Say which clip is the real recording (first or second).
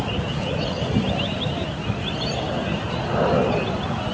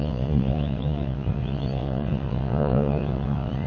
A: first